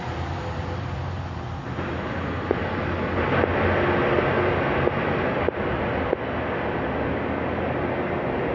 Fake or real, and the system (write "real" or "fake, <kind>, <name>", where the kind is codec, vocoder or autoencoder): real